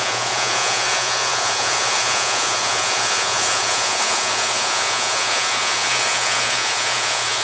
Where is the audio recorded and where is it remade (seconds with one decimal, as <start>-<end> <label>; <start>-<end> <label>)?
0.0-7.4 remade